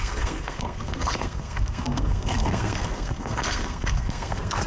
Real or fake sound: fake